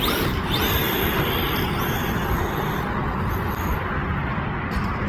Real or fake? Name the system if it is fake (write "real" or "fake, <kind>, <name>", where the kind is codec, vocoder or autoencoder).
real